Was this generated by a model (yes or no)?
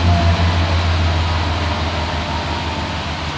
no